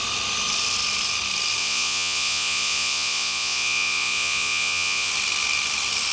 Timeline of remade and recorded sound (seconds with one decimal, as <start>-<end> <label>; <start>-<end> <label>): 0.0-1.6 recorded; 1.6-5.1 remade; 5.1-6.1 recorded